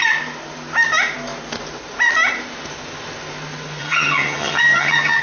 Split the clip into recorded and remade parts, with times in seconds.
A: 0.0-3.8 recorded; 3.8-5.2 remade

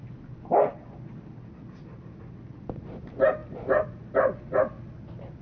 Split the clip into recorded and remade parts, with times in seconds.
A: 0.0-5.4 recorded

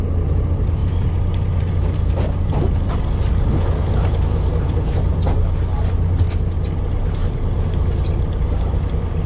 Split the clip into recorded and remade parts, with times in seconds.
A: 0.0-9.3 recorded

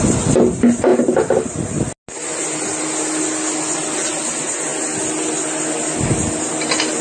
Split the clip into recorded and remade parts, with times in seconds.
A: 0.0-7.0 recorded

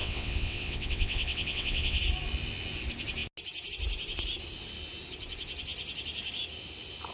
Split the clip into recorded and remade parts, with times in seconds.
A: 0.0-2.0 remade; 2.0-7.1 recorded

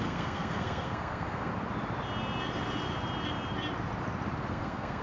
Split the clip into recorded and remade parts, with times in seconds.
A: 0.0-1.5 remade; 1.5-4.5 recorded; 4.5-5.0 remade